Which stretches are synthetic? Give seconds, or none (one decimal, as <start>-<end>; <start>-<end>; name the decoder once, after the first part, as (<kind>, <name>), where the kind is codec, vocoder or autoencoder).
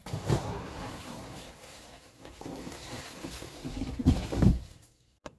0.0-5.4 (codec, SNAC)